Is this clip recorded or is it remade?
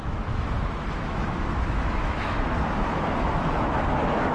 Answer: remade